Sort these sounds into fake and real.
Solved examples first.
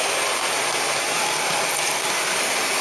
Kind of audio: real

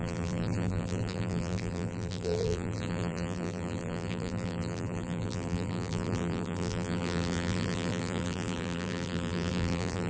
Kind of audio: fake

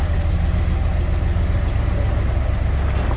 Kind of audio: real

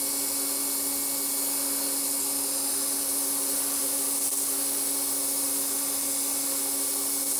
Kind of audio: real